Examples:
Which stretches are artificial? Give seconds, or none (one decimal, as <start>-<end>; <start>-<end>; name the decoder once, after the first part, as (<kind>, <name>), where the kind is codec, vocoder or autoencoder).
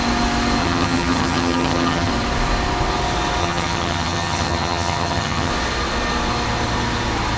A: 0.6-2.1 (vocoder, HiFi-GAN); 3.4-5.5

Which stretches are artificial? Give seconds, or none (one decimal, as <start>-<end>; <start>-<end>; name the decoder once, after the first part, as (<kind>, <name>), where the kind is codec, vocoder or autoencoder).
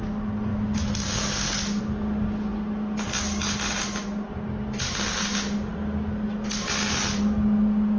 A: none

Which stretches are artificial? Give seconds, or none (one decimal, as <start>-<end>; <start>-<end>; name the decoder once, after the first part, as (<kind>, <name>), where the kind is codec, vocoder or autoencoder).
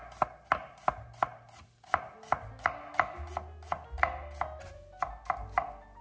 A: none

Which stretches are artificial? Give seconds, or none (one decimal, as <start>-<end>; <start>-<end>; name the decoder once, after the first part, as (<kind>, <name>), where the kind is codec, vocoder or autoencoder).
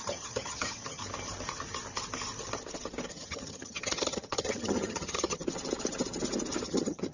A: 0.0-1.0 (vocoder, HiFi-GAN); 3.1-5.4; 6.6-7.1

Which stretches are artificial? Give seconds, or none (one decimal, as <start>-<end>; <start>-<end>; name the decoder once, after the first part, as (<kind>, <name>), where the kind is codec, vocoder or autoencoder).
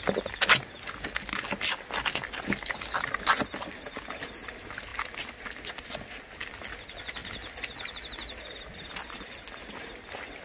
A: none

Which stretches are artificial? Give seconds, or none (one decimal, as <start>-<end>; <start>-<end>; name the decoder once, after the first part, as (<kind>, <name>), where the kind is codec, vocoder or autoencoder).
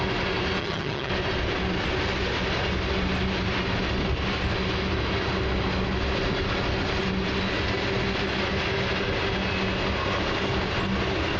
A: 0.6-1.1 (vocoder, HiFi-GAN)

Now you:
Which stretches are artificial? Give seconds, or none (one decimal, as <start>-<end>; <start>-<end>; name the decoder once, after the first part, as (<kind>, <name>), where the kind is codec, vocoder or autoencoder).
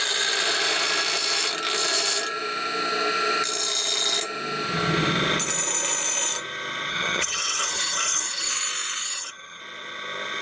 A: 6.9-8.5 (vocoder, HiFi-GAN); 9.0-9.6